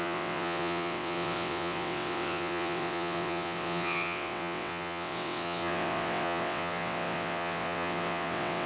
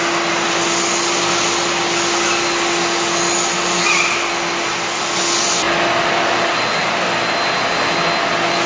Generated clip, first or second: first